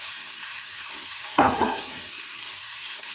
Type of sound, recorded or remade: remade